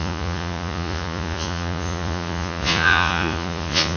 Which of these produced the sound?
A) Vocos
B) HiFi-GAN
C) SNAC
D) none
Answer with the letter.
A